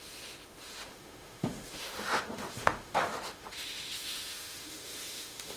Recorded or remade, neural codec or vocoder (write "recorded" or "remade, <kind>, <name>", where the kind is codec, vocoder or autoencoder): remade, autoencoder, DAC-VAE